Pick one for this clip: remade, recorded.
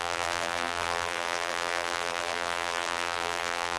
remade